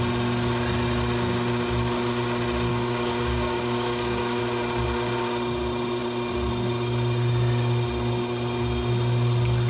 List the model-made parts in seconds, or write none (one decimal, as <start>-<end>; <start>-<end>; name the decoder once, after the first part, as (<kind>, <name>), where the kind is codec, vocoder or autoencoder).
2.7-4.4 (codec, DAC)